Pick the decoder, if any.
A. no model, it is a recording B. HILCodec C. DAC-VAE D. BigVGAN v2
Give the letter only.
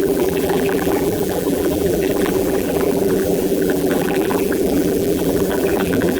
D